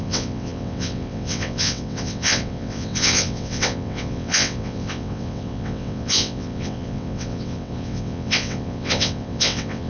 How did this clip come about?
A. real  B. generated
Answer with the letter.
B